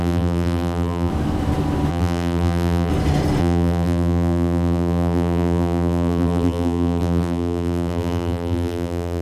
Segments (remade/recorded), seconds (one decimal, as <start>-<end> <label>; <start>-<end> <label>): 0.0-1.1 remade; 1.1-1.9 recorded; 1.9-2.9 remade; 2.9-3.4 recorded; 3.4-9.2 remade